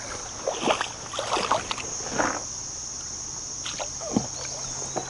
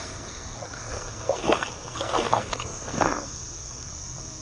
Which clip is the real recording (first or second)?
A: first